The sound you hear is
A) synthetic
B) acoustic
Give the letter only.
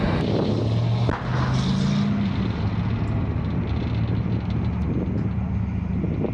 B